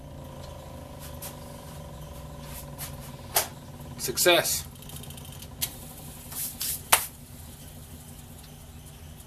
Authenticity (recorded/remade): recorded